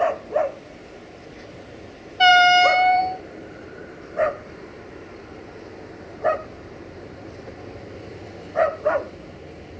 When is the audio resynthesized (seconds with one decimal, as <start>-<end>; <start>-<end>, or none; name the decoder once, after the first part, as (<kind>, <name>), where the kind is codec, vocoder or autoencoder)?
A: 2.3-3.0 (vocoder, BigVGAN v2)